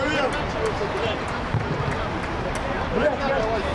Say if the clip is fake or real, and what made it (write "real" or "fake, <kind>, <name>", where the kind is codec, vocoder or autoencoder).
real